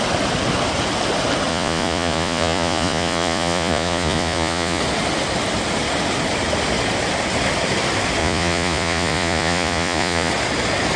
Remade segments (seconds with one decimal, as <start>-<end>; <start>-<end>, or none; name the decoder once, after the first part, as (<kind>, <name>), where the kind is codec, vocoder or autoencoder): 1.5-4.8 (vocoder, Vocos); 8.2-10.3